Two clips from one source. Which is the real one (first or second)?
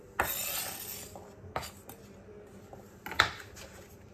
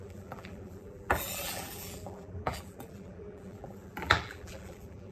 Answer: first